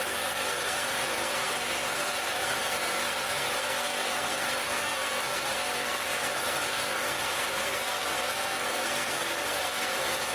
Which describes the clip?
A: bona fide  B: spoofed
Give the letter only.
B